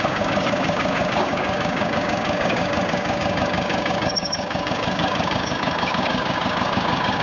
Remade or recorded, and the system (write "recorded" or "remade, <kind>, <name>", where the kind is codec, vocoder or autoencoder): remade, codec, DAC